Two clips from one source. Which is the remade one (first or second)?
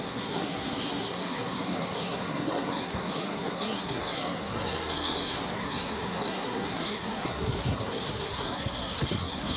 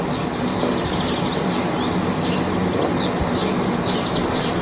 first